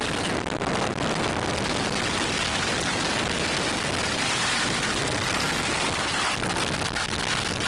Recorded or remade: recorded